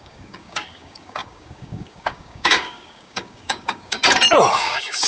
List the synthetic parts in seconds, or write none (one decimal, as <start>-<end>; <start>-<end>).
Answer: 0.0-4.0; 4.5-5.1